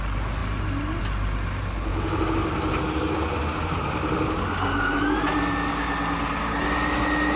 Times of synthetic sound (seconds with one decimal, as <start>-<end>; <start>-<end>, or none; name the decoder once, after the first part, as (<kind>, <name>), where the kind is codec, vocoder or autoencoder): none